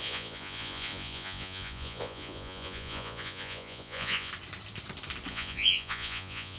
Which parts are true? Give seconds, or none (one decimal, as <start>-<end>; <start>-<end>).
4.3-5.3